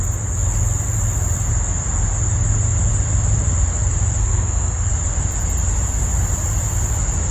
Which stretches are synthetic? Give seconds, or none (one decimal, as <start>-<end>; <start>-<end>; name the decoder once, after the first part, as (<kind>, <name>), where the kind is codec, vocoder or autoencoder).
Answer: 4.2-4.9 (codec, SNAC)